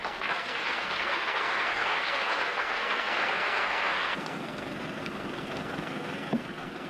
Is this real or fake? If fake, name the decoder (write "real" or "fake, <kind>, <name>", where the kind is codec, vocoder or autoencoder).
fake, codec, SNAC